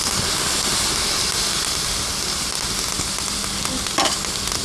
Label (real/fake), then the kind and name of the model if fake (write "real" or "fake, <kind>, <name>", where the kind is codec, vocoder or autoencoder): real